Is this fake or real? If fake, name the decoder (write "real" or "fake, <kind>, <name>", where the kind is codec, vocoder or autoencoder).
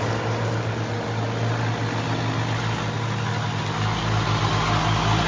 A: real